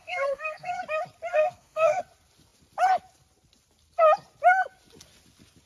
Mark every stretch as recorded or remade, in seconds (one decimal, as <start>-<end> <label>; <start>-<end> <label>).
0.0-0.8 remade; 0.8-1.3 recorded; 1.3-2.0 remade; 2.0-5.7 recorded